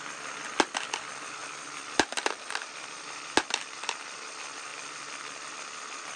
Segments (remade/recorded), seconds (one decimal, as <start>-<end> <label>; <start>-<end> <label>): 0.0-4.7 recorded; 4.7-5.5 remade; 5.5-6.2 recorded